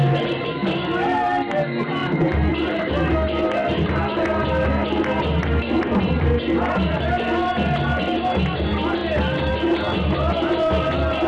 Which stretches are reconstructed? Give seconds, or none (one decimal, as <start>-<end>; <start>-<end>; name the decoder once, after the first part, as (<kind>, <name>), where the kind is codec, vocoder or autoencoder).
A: none